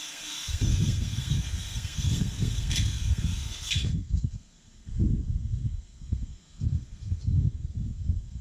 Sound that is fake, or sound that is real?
fake